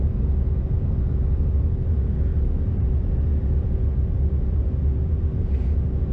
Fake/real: real